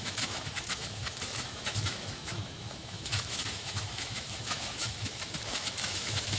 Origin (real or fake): fake